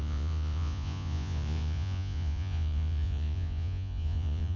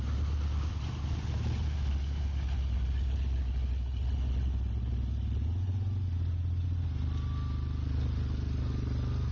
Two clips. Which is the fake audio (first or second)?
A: first